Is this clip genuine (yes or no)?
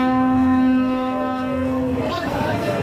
no